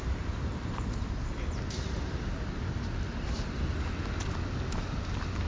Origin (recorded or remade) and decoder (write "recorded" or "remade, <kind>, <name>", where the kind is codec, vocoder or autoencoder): recorded